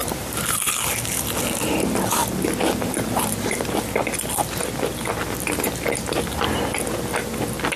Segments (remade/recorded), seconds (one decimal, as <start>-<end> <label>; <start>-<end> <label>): 0.0-0.6 remade; 0.6-7.8 recorded